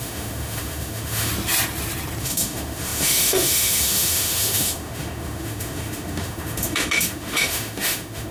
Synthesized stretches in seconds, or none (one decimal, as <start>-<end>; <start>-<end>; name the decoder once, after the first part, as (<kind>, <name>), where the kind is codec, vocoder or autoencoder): 0.0-1.3 (autoencoder, DAC-VAE); 2.2-8.3